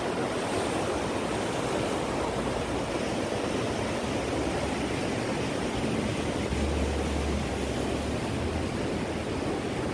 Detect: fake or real real